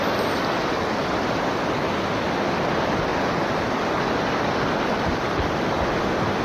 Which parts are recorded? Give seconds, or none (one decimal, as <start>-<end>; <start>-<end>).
3.1-6.4